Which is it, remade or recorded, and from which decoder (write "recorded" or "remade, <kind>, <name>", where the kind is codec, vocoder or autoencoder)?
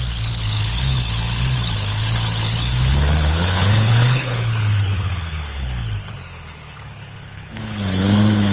remade, codec, HILCodec